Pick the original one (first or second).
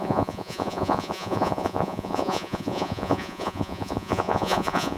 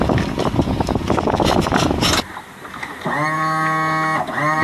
second